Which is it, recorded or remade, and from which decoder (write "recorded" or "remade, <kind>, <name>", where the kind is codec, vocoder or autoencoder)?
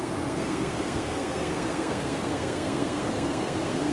remade, codec, SNAC